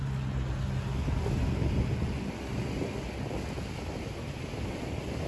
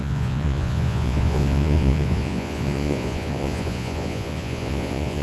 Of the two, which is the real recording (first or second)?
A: first